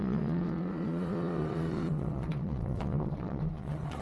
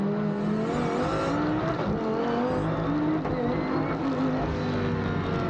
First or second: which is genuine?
second